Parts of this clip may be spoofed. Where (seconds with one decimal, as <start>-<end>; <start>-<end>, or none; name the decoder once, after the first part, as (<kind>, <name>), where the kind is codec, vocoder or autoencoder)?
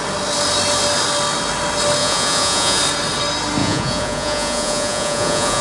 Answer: 2.0-2.8 (vocoder, Vocos); 3.6-5.6